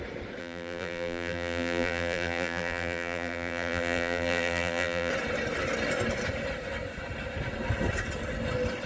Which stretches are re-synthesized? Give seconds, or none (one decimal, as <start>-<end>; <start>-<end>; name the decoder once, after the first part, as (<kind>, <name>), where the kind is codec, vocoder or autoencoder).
0.4-5.1 (vocoder, BigVGAN v2)

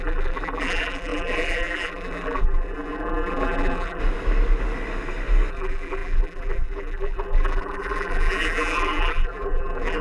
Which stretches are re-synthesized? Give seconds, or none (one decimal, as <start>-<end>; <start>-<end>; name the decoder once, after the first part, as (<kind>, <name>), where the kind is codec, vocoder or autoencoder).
0.0-4.0 (vocoder, BigVGAN v2); 5.5-10.0

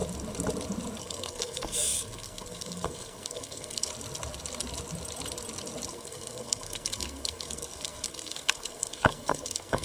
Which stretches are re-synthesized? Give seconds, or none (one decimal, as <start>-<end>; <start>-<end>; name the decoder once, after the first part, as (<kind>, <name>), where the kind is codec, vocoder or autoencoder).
1.0-3.9 (codec, SNAC); 5.9-9.8

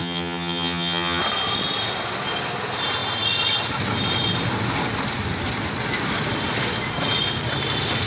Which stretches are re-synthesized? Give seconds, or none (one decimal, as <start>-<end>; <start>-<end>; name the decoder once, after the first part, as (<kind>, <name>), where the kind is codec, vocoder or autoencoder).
0.0-1.2 (vocoder, HiFi-GAN)

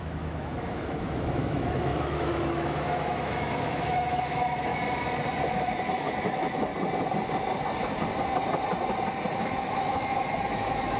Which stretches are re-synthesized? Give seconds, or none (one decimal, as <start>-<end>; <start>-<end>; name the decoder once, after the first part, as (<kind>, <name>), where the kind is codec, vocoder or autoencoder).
0.0-4.7 (autoencoder, DAC-VAE); 5.5-6.7; 9.4-11.0

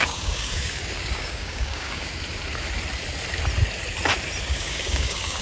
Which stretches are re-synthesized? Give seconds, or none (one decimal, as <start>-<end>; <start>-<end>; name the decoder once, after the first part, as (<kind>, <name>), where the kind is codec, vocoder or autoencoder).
0.0-2.1 (codec, DAC); 4.4-5.4